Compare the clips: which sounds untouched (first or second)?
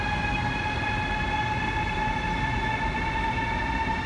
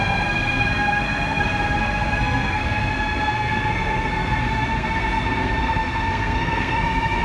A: first